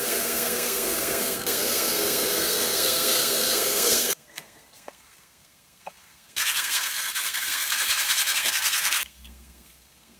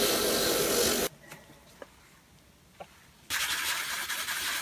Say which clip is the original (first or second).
second